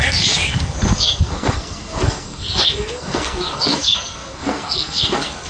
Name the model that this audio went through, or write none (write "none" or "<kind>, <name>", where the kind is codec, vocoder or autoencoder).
codec, SNAC